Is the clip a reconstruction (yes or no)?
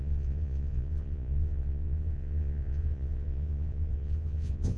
yes